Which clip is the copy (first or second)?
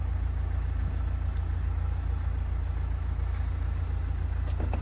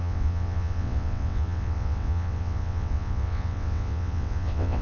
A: second